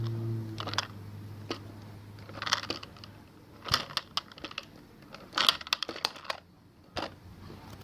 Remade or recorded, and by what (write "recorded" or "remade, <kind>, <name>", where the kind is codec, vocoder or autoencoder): recorded